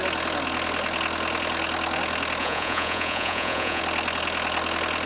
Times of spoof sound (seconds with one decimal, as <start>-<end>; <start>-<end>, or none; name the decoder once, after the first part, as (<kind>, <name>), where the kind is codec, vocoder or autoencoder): 2.4-3.8 (vocoder, Vocos)